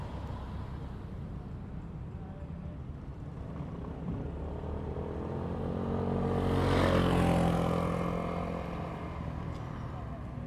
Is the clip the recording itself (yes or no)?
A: yes